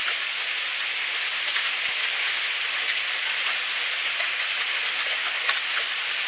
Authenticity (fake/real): real